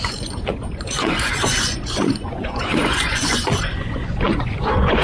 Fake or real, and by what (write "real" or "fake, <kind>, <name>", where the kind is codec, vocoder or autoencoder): fake, vocoder, Vocos